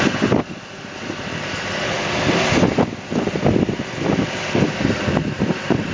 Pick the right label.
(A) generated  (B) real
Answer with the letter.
B